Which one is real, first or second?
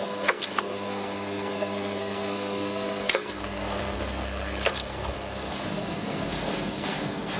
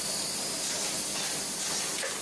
second